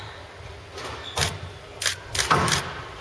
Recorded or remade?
recorded